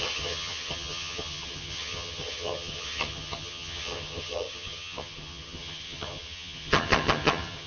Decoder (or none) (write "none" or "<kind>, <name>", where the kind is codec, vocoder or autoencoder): vocoder, HiFi-GAN